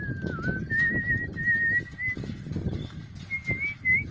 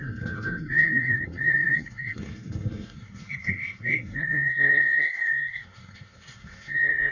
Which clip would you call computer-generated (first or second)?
second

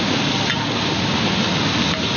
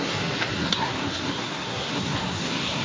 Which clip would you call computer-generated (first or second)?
second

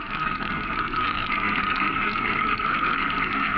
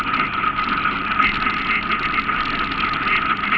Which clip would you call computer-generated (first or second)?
first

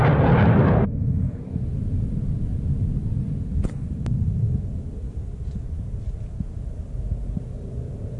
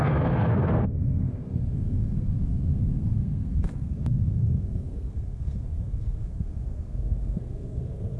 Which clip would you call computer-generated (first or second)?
second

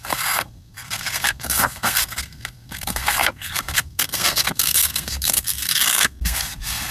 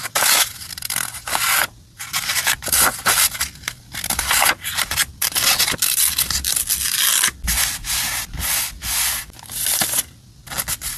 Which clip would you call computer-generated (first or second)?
first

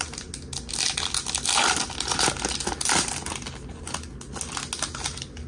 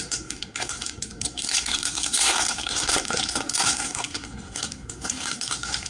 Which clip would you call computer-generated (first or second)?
second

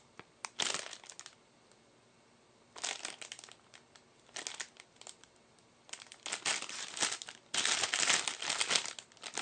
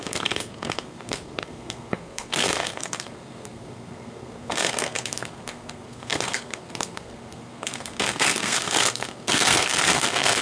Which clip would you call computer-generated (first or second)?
second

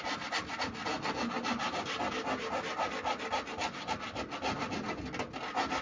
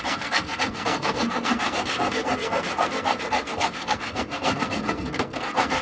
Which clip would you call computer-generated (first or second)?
second